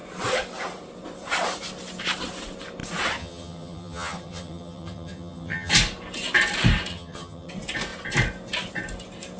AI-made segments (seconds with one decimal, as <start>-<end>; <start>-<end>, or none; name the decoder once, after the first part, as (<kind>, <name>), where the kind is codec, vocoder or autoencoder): 3.2-5.7 (vocoder, HiFi-GAN); 6.9-7.5

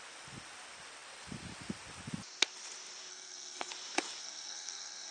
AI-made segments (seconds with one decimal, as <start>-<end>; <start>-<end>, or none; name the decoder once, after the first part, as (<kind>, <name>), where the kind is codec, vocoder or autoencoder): 3.1-3.7 (codec, SNAC); 4.2-5.1

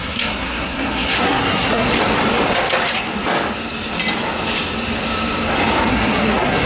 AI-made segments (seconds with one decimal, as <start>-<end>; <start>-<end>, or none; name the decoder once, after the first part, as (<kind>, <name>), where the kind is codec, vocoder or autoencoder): 0.0-1.9 (codec, SNAC); 5.9-6.7

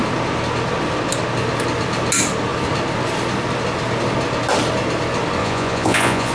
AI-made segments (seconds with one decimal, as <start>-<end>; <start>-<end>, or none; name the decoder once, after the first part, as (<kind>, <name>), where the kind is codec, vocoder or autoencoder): 5.4-6.3 (vocoder, Vocos)